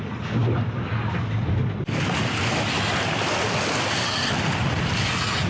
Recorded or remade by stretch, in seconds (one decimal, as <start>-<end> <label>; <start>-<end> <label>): 0.0-5.5 recorded